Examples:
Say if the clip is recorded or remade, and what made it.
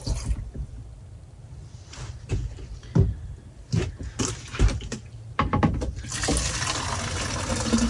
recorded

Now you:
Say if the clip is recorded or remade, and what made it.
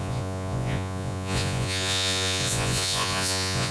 remade, vocoder, Vocos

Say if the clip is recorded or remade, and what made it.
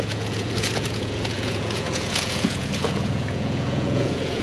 remade, vocoder, Vocos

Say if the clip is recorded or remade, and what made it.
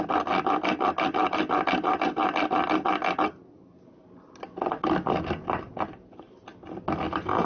recorded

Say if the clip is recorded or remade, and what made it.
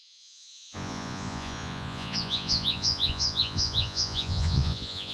remade, vocoder, Vocos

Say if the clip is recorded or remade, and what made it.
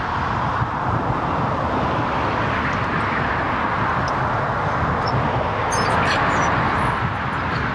recorded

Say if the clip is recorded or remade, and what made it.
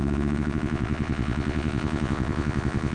remade, vocoder, Vocos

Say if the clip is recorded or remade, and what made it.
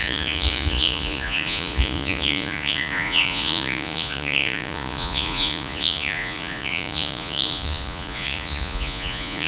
remade, vocoder, Vocos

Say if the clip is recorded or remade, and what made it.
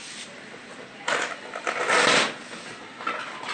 recorded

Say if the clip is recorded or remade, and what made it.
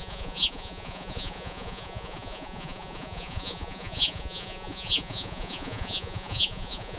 remade, vocoder, Vocos